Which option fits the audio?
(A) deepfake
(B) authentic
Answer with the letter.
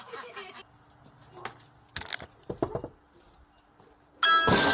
B